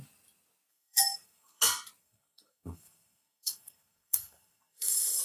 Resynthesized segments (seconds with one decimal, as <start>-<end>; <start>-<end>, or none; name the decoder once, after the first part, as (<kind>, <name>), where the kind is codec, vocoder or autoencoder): 0.7-1.6 (codec, SNAC); 2.0-5.2